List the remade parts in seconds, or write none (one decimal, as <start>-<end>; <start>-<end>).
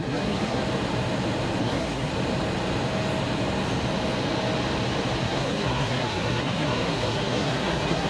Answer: 0.0-0.6; 1.6-2.1; 5.2-8.1